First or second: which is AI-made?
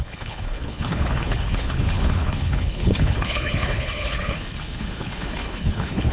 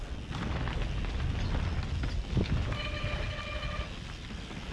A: first